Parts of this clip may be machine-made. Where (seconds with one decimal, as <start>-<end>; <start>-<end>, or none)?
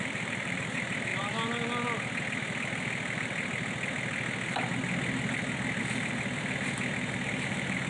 0.0-1.1; 5.8-7.9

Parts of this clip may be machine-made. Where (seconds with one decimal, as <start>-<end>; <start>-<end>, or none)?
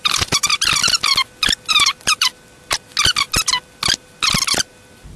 0.0-0.5; 1.7-2.3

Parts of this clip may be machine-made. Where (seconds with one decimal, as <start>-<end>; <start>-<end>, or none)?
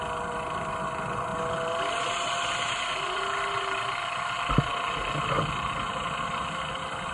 none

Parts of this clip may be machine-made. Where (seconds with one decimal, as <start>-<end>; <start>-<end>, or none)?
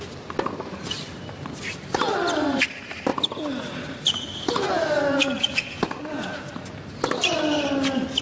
none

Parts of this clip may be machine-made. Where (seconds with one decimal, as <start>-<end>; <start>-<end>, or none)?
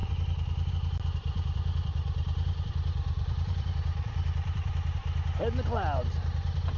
0.0-0.7; 1.2-4.7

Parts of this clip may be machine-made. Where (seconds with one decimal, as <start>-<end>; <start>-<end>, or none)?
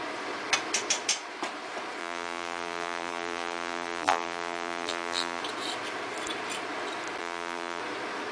2.0-5.4; 7.2-7.8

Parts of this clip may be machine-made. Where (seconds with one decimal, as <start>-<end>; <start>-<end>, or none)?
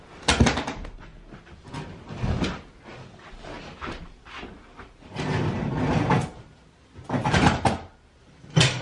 none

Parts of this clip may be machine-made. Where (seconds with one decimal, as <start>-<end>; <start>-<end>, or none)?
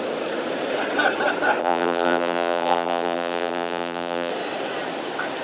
1.6-4.3